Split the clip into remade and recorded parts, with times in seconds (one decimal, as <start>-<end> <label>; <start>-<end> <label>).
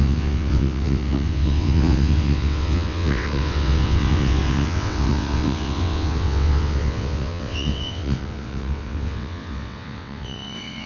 0.0-10.9 remade